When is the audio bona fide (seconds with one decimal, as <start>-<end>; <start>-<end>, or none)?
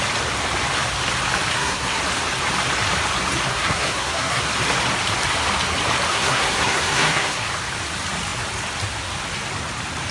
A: 0.0-1.5; 2.0-3.5; 4.4-6.1; 7.5-10.1